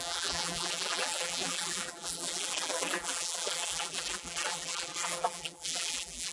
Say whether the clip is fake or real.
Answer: fake